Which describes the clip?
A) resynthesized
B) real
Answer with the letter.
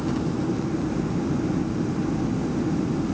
B